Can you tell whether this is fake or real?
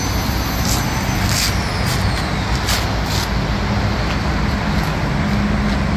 real